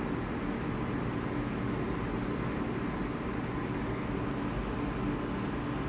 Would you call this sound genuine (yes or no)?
yes